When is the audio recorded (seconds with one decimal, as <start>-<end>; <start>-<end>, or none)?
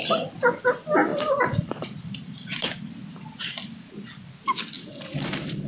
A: 0.0-1.1; 2.7-4.9